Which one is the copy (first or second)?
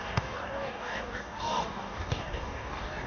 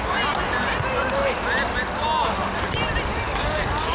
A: first